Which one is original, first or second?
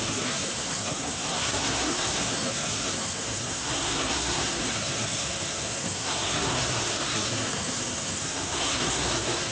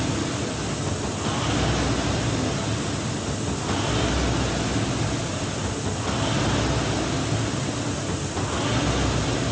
second